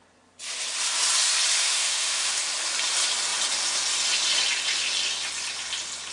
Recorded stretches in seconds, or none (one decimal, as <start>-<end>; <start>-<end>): 0.0-1.6; 2.4-6.1